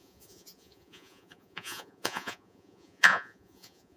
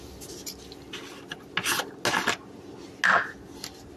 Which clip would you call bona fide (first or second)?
second